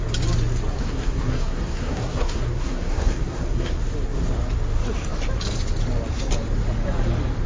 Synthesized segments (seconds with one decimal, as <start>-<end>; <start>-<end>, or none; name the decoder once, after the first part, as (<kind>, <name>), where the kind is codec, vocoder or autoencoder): 0.8-3.8 (codec, SNAC)